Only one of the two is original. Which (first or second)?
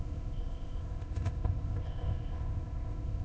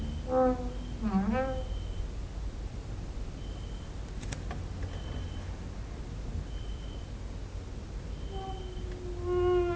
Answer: second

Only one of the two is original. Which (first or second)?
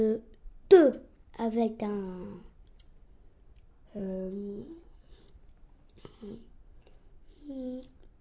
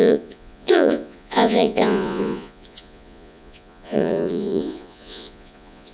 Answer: first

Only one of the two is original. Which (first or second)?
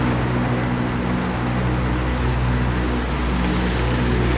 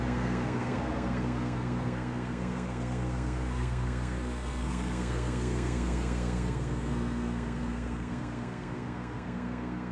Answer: first